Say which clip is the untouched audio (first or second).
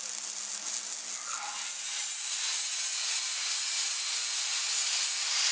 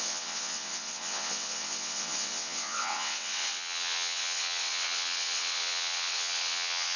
first